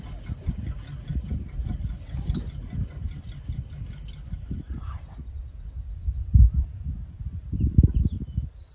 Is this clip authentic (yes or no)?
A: yes